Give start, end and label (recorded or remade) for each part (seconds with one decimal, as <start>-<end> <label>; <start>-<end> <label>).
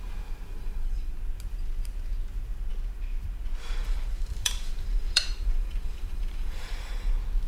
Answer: 0.0-0.5 recorded; 0.5-1.1 remade; 1.1-3.8 recorded; 3.8-7.1 remade; 7.1-7.5 recorded